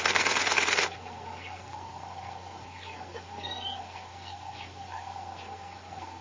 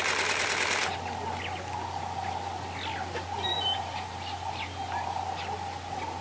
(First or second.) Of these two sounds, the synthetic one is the first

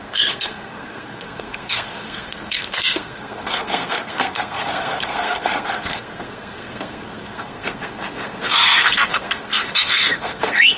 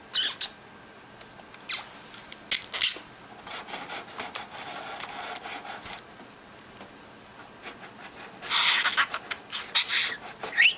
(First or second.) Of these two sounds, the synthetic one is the first